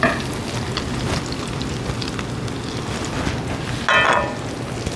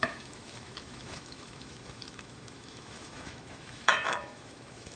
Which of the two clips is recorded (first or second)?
first